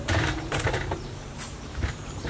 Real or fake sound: fake